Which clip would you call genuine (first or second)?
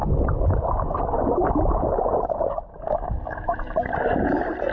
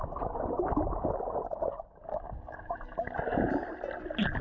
second